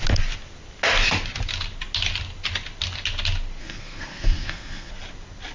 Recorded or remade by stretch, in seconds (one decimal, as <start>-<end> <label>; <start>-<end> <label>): 0.0-3.6 recorded; 3.6-4.9 remade; 4.9-5.5 recorded